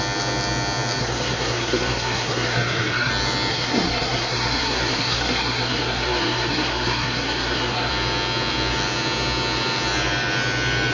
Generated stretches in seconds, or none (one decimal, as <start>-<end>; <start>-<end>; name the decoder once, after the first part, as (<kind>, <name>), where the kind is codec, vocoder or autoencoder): 1.0-3.1 (codec, SNAC); 3.5-7.9

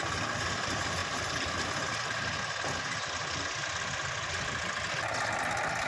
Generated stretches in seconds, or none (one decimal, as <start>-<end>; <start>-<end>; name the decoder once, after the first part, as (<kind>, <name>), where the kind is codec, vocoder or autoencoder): none

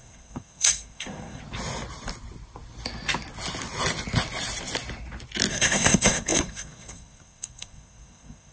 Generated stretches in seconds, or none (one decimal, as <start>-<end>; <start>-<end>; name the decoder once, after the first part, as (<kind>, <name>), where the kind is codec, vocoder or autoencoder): 0.0-1.4 (codec, SNAC); 5.5-8.5